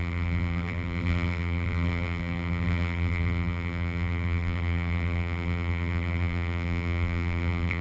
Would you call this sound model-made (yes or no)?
yes